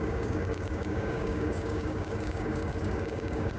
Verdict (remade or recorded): remade